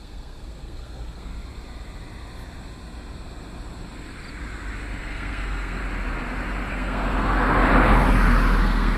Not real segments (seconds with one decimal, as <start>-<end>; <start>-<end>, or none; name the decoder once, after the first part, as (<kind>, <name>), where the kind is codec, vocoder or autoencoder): 0.0-1.3 (codec, SNAC); 5.0-5.8; 6.7-7.6; 8.6-9.0